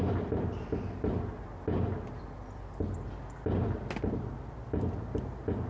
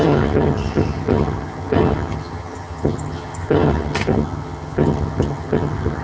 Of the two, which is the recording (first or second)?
first